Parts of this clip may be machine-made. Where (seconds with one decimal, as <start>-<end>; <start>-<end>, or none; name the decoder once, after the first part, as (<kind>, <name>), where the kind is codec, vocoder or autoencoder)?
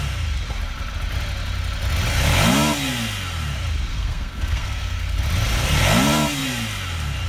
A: 3.9-5.2 (codec, SNAC)